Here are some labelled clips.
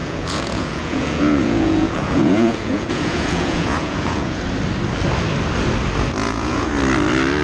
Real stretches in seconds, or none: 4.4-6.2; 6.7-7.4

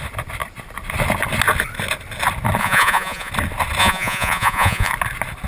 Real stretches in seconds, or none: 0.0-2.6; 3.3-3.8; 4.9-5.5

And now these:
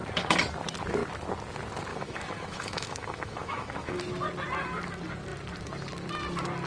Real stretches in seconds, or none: 0.0-1.9; 4.0-6.7